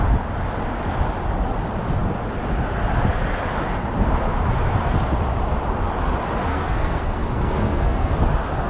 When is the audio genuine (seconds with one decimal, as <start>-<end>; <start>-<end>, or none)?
0.0-6.5; 8.1-8.7